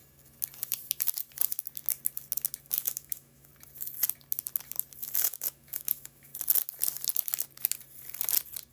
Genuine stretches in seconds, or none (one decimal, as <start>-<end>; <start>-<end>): 0.0-2.6; 3.5-5.0; 6.3-8.7